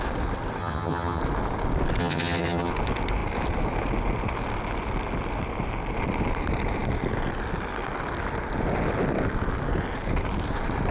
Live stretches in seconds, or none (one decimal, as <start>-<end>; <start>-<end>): 0.0-0.6; 1.2-2.0; 2.7-10.9